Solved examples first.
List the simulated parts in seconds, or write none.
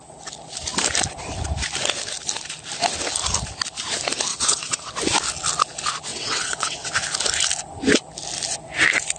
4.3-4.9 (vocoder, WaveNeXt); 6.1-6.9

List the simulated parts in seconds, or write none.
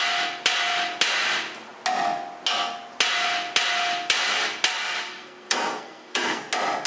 5.1-6.4 (codec, SNAC)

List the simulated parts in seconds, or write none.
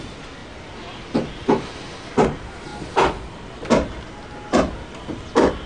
none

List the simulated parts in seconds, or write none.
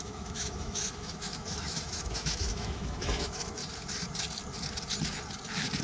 0.0-3.6 (autoencoder, DAC-VAE)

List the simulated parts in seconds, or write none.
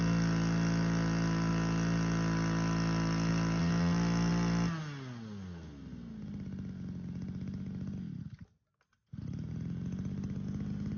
none